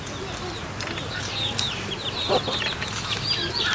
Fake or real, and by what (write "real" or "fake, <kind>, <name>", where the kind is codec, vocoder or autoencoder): real